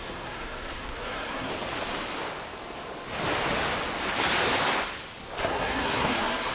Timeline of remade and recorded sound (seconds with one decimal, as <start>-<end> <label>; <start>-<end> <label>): 0.0-1.5 remade; 1.5-5.4 recorded; 5.4-6.5 remade